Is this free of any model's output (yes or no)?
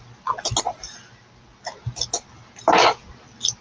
yes